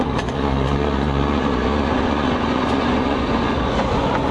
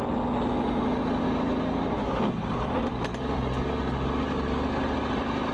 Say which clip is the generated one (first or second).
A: first